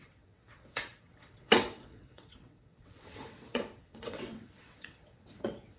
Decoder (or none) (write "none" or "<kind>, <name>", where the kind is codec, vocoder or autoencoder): vocoder, WaveNeXt